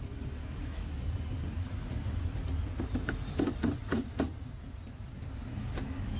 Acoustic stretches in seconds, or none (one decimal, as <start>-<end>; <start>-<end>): 0.0-0.4; 1.0-5.5